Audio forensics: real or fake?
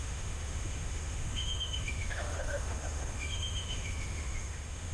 fake